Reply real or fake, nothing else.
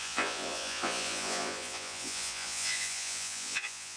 fake